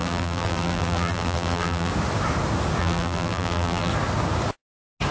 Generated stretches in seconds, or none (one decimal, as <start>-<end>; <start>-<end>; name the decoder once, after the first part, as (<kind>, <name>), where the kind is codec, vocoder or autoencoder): 0.0-1.9 (vocoder, BigVGAN v2); 2.8-3.9